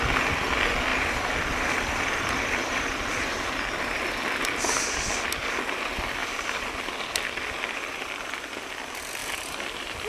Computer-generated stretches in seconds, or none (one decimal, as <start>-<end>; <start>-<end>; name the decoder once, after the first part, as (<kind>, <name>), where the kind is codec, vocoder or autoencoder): 0.9-3.2 (vocoder, BigVGAN v2); 6.2-8.3; 9.2-10.1